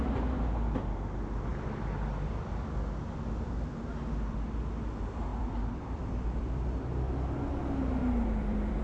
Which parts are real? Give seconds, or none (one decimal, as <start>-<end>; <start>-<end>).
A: 0.0-1.5; 2.7-5.3; 6.4-8.0